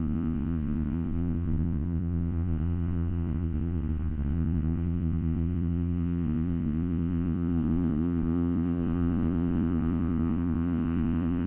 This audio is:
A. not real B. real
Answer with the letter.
A